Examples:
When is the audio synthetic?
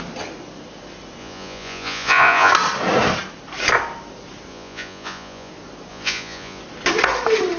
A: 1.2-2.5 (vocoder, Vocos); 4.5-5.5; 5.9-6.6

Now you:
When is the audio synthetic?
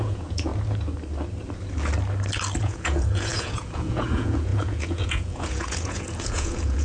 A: 0.0-0.5 (vocoder, Vocos); 2.6-6.8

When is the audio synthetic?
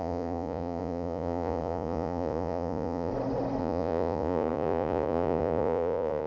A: 0.0-3.1 (vocoder, Vocos); 3.6-6.3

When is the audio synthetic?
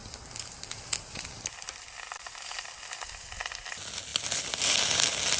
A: none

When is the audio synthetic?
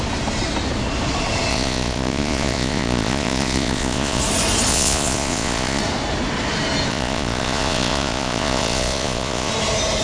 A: 1.5-4.2 (vocoder, Vocos); 4.7-5.8; 6.9-9.5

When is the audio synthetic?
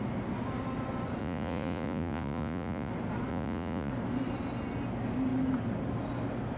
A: 1.2-2.9 (vocoder, Vocos); 3.3-3.9